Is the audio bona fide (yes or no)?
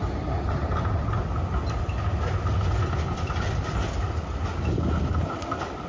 yes